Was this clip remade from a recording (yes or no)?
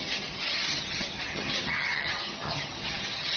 yes